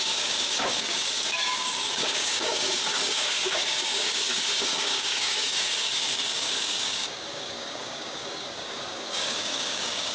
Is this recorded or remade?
remade